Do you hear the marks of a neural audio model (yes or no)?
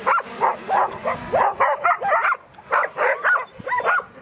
no